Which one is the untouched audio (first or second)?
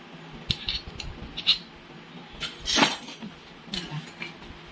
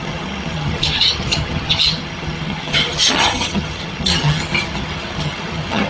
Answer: first